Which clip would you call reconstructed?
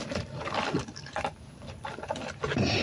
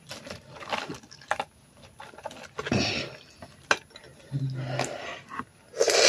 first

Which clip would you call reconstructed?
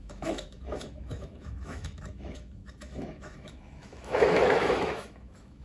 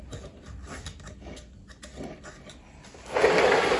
first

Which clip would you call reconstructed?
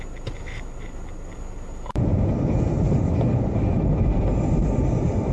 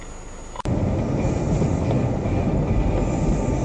first